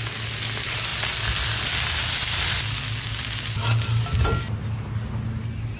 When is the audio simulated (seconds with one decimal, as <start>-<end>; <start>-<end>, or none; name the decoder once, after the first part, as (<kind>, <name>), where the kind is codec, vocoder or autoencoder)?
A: none